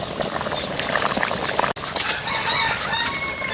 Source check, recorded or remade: recorded